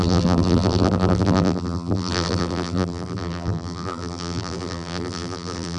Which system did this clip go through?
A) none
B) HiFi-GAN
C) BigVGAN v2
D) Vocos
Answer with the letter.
C